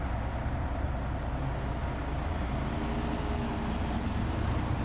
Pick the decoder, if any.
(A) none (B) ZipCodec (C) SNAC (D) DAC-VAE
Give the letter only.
A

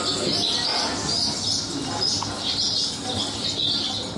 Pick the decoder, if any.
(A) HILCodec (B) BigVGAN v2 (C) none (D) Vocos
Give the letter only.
C